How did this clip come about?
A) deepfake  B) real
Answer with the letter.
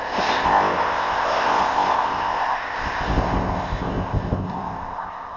A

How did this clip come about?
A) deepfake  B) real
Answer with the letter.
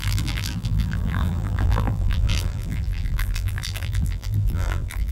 A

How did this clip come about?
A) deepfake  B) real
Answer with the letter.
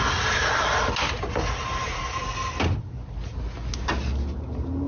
B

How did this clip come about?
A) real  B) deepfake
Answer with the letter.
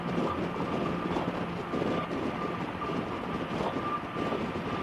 A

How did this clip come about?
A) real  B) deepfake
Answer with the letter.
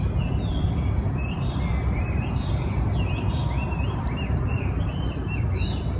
A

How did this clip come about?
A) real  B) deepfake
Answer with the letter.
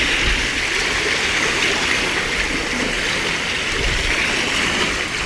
A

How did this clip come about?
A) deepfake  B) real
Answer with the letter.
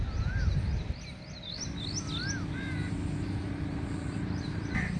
B